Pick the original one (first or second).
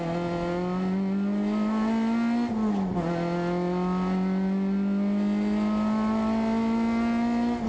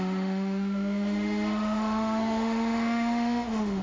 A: first